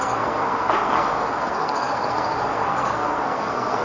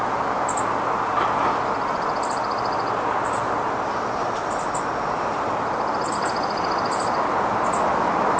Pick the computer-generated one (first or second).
first